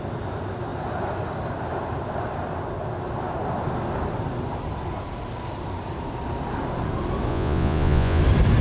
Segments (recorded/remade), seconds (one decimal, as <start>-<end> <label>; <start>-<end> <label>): 0.0-7.3 recorded; 7.3-8.2 remade; 8.2-8.6 recorded

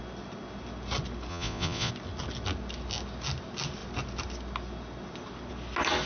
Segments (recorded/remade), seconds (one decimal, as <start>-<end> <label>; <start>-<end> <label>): 0.0-1.3 recorded; 1.3-1.9 remade; 1.9-6.1 recorded